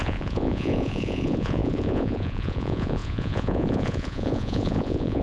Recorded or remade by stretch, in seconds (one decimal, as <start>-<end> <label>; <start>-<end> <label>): 0.0-5.2 remade